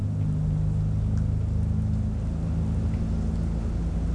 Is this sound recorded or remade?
recorded